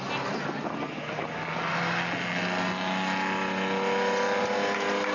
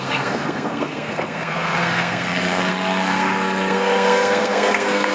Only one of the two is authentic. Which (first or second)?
first